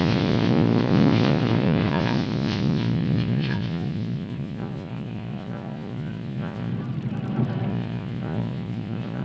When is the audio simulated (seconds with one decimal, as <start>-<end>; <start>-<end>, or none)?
0.0-6.7; 7.7-9.2